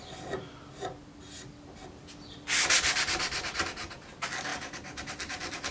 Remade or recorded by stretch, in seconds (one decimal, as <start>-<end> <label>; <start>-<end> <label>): 0.0-4.5 recorded; 4.5-5.7 remade